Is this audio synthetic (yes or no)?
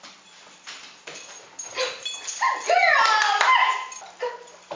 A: no